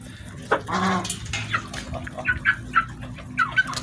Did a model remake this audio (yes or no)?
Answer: no